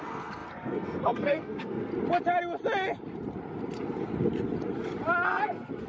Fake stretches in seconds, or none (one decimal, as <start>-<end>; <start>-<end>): 0.0-1.9; 5.4-5.9